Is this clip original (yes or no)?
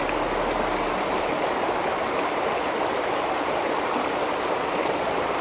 yes